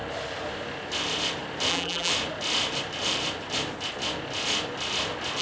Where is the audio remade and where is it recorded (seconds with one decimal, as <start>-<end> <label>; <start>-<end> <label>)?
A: 0.0-1.7 recorded; 1.7-2.1 remade; 2.1-5.4 recorded